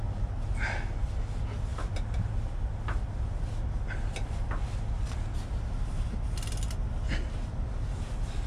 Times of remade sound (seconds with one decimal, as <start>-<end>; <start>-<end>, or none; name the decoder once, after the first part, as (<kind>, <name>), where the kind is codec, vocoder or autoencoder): none